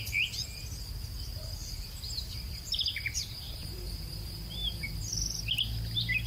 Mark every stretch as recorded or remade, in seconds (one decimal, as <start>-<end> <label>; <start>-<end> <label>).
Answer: 0.0-1.6 recorded; 1.6-5.4 remade; 5.4-6.3 recorded